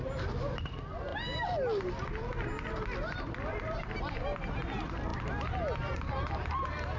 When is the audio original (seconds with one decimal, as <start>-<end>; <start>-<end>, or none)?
0.0-7.0